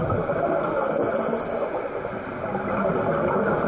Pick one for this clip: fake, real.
real